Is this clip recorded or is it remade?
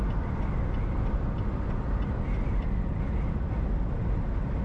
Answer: recorded